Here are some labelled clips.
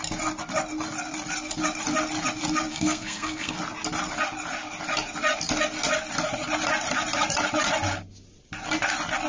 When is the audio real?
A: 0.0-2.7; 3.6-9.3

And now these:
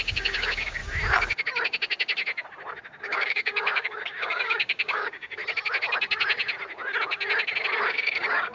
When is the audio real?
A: 0.8-3.0; 5.4-7.9

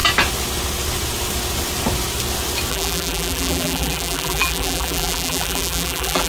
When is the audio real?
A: 0.0-2.7

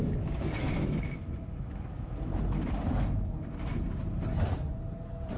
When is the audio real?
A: 2.3-5.4

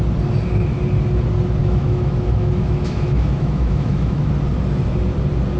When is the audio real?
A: 0.0-1.6; 4.3-5.6

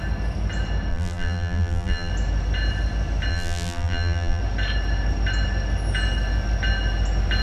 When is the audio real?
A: 0.0-0.9; 2.1-3.3; 4.4-7.4